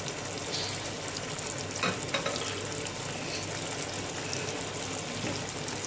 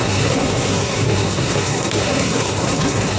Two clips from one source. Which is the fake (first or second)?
second